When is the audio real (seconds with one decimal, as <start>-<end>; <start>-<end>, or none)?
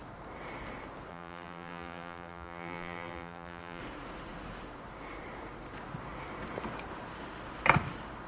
0.0-1.1; 3.8-8.3